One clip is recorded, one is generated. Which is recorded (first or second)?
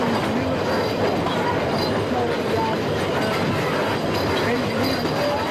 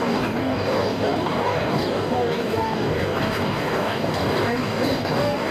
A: first